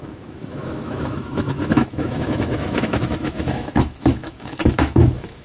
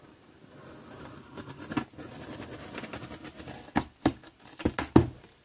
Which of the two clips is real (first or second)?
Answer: second